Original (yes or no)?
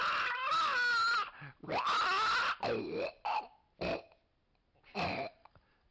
yes